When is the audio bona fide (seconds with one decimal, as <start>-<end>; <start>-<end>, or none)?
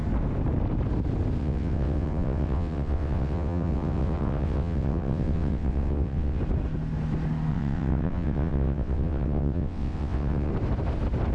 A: 0.0-1.4; 6.4-7.5; 10.5-11.3